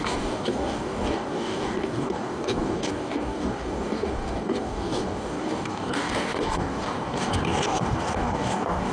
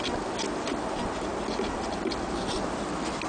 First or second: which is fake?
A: first